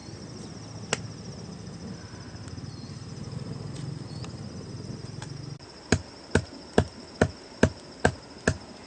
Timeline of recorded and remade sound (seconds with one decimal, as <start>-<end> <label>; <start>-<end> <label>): 0.0-8.9 recorded